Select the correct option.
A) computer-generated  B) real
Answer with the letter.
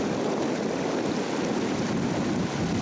B